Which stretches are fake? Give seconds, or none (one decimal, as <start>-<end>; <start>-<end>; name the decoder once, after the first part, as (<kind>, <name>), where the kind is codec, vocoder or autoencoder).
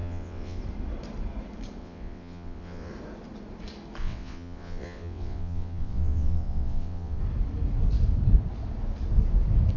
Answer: 0.0-0.6 (vocoder, WaveNeXt); 1.8-2.9; 4.0-7.2